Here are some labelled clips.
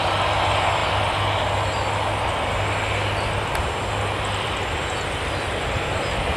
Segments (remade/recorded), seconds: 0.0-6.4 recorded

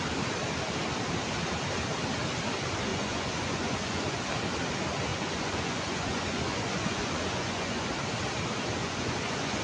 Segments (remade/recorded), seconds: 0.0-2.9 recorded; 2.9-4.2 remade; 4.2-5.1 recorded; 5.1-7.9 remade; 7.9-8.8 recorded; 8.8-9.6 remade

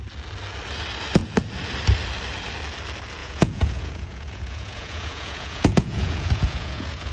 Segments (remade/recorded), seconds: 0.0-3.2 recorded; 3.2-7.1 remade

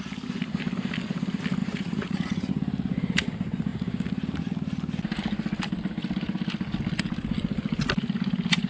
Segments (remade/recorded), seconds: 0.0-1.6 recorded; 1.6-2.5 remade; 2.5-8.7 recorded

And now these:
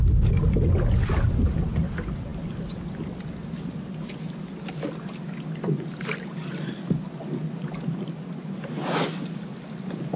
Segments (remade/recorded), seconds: 0.0-10.2 recorded